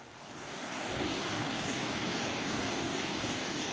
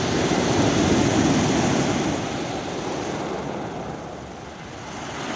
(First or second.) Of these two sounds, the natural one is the second